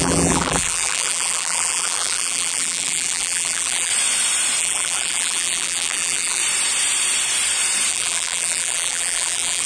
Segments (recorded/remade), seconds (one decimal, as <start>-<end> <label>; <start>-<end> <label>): 0.0-3.9 remade; 3.9-4.6 recorded; 4.6-6.4 remade; 6.4-7.9 recorded; 7.9-9.7 remade